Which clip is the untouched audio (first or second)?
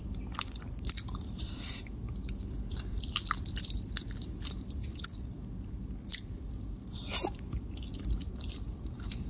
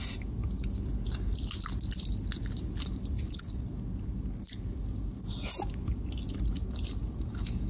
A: second